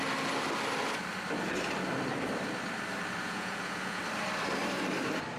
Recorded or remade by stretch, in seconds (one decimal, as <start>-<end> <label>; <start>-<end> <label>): 0.0-3.2 recorded; 3.2-4.0 remade; 4.0-5.4 recorded